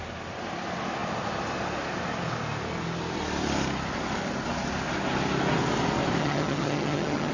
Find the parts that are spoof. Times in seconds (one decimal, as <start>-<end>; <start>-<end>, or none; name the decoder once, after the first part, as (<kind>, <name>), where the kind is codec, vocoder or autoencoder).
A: 6.2-7.3 (vocoder, HiFi-GAN)